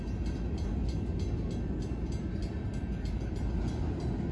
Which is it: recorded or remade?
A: recorded